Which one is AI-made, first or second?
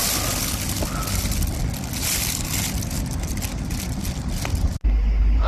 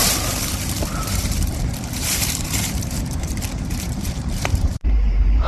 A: second